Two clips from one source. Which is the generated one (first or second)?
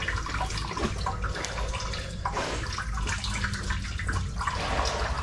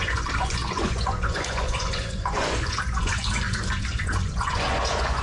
second